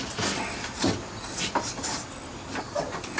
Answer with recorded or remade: recorded